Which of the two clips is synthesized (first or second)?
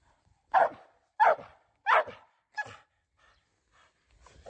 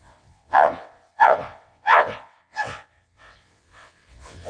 second